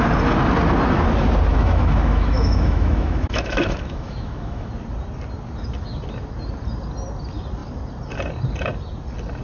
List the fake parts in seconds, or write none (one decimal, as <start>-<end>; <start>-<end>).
1.5-4.7